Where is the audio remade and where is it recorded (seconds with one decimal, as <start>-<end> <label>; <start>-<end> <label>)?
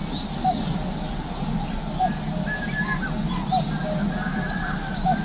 0.0-5.2 recorded